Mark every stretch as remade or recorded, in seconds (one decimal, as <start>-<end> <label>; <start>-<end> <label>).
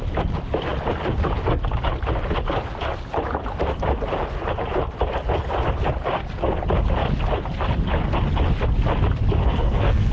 0.0-9.4 recorded; 9.4-10.1 remade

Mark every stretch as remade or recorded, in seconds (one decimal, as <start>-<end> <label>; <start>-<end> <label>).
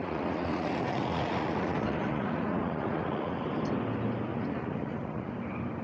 0.0-3.5 remade; 3.5-4.3 recorded; 4.3-5.3 remade; 5.3-5.8 recorded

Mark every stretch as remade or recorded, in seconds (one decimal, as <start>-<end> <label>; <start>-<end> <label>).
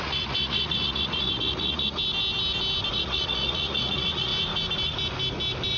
0.0-2.0 remade; 2.0-2.9 recorded; 2.9-4.3 remade; 4.3-5.8 recorded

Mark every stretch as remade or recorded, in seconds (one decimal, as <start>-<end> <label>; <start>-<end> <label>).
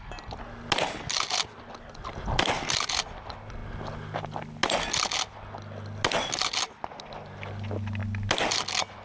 0.0-9.0 recorded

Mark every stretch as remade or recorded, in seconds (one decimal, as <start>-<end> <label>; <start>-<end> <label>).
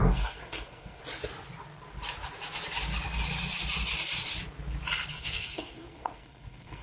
0.0-1.0 remade; 1.0-5.1 recorded; 5.1-6.8 remade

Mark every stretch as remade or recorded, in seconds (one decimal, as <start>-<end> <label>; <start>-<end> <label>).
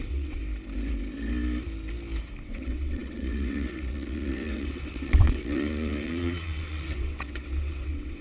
0.0-0.4 remade; 0.4-2.4 recorded; 2.4-8.2 remade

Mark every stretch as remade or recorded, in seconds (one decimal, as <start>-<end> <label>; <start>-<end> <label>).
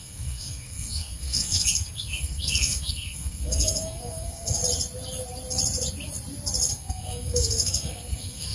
0.0-4.6 remade; 4.6-6.7 recorded; 6.7-8.5 remade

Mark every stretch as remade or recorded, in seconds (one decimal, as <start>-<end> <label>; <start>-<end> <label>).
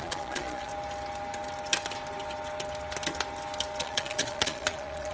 0.0-0.7 remade; 0.7-3.8 recorded; 3.8-5.1 remade